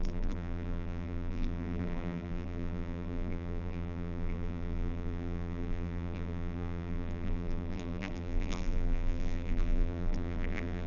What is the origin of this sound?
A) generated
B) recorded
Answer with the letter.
A